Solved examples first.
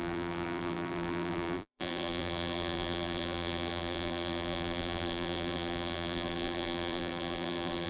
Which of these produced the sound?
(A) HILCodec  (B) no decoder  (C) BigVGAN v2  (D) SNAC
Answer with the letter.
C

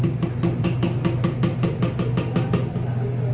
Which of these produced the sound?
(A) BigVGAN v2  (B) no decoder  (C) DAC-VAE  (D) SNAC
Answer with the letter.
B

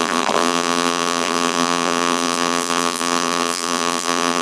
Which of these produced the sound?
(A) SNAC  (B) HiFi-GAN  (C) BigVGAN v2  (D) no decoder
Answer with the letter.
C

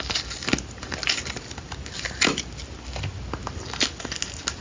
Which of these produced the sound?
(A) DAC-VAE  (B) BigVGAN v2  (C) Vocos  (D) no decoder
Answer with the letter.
D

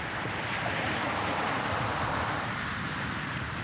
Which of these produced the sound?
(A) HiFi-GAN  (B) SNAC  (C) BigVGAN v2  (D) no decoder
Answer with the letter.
D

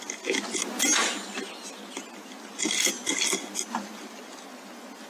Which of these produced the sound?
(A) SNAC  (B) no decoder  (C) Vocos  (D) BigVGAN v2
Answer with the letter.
B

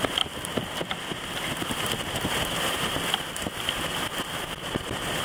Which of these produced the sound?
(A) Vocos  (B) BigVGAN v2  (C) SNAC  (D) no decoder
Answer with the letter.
D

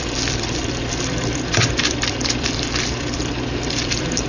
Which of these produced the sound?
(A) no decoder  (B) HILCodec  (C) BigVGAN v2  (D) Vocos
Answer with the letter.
C